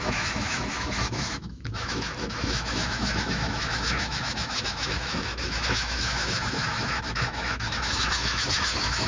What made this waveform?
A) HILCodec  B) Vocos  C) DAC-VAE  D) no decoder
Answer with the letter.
C